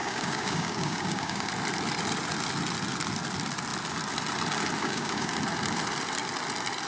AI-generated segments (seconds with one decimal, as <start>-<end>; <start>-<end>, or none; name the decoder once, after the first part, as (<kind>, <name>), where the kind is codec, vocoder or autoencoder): 0.0-1.5 (codec, DAC); 4.8-5.3